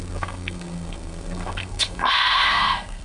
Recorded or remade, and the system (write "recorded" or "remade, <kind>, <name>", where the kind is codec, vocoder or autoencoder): remade, codec, SNAC